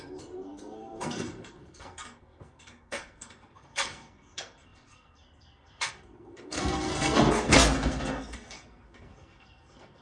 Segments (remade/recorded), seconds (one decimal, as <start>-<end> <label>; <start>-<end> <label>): 0.0-10.0 remade